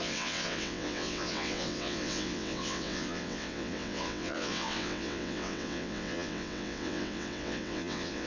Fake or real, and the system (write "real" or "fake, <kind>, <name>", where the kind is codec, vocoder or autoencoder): fake, vocoder, WaveNeXt